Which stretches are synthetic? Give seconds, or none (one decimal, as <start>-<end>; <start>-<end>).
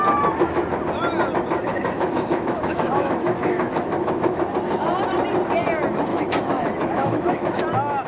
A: 1.7-4.4; 6.1-7.6